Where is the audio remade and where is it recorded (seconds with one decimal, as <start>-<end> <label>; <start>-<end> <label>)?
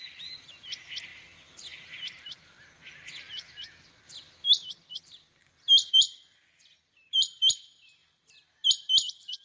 0.0-1.1 remade; 1.1-5.9 recorded; 5.9-9.4 remade